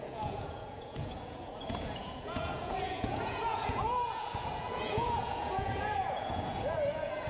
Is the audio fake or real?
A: fake